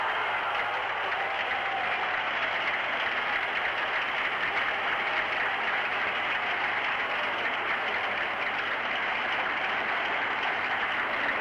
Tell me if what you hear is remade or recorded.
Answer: recorded